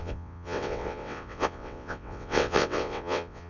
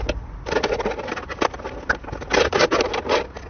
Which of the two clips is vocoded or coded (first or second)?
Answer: first